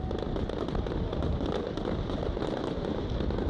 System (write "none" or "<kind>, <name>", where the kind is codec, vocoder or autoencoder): none